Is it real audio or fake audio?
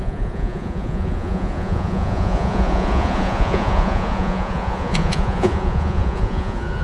fake